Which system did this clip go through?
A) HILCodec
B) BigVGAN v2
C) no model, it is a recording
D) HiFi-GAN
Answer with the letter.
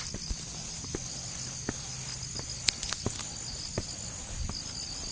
C